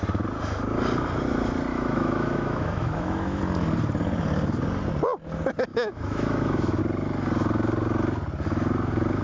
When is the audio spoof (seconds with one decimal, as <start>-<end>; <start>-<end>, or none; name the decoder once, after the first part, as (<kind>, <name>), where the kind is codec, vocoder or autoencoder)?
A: 1.7-3.4 (autoencoder, DAC-VAE); 5.7-6.8

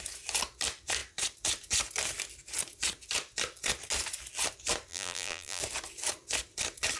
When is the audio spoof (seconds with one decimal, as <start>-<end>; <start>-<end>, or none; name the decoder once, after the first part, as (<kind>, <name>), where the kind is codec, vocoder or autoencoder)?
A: 4.9-5.6 (vocoder, BigVGAN v2)

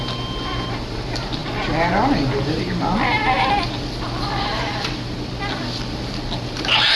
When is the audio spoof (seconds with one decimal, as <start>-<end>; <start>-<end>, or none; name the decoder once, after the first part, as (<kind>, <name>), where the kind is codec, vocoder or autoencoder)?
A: none

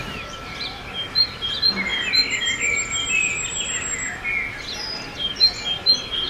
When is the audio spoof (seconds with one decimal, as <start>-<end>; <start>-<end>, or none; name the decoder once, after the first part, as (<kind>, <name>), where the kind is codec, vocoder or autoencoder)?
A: none

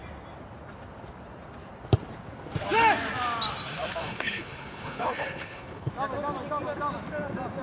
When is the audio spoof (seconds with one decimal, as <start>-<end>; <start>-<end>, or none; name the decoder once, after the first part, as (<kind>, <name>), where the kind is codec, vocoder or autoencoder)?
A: 4.0-5.9 (codec, HILCodec)

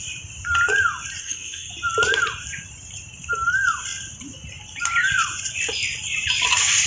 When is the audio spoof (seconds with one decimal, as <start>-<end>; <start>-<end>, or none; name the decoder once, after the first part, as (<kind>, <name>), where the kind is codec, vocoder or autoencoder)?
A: 1.2-1.7 (codec, SNAC)

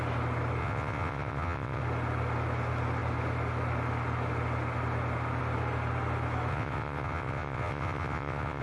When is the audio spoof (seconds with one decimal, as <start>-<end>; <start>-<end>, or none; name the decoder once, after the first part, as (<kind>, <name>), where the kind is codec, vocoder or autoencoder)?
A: 0.6-1.8 (vocoder, WaveNeXt); 6.5-8.6